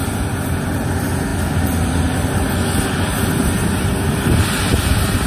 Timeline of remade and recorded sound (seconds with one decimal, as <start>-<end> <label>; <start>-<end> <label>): 0.0-5.3 recorded